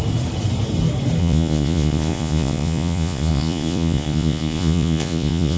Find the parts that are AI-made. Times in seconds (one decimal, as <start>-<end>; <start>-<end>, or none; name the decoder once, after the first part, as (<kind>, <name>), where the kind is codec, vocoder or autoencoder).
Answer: 1.2-5.6 (vocoder, Vocos)